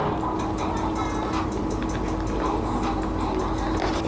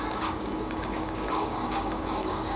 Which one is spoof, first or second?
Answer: second